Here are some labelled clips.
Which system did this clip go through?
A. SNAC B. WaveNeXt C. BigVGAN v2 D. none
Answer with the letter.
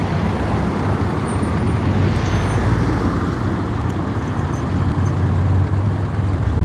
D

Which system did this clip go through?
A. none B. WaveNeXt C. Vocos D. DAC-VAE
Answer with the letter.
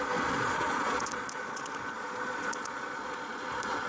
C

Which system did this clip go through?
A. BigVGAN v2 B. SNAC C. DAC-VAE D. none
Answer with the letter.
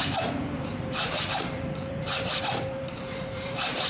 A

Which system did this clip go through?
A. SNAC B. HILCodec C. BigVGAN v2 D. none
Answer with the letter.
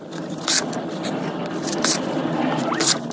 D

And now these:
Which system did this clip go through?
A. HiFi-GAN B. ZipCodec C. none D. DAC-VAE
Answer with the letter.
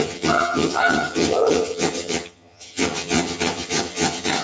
A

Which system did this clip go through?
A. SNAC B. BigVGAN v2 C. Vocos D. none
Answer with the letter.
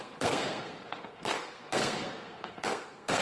A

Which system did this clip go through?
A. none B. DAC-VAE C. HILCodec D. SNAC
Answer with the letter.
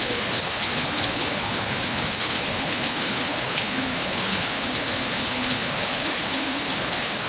C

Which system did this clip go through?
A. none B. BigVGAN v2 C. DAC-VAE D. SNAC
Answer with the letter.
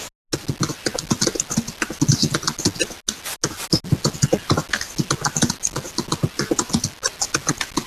A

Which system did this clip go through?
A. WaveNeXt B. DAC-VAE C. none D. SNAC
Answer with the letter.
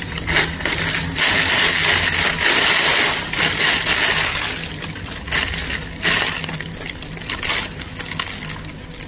C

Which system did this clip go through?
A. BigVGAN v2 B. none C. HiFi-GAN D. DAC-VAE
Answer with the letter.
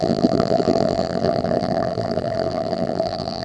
A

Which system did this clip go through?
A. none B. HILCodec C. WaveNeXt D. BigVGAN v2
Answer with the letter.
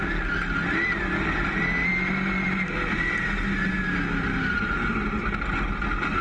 A